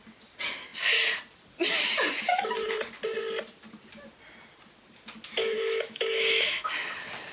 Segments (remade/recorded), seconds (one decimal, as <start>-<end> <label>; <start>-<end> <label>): 0.0-5.4 recorded; 5.4-6.7 remade; 6.7-7.3 recorded